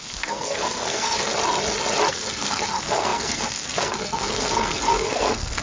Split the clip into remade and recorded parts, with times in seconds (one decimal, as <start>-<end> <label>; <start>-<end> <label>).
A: 0.0-1.3 remade; 1.3-2.1 recorded; 2.1-5.6 remade